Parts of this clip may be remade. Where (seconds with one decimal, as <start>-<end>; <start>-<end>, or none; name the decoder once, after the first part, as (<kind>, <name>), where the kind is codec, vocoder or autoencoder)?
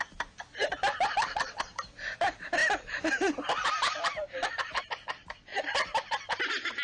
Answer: 2.6-4.8 (vocoder, BigVGAN v2); 5.5-6.1